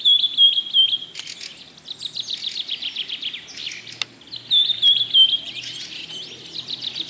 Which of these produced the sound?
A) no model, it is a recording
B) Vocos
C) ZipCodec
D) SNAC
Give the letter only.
A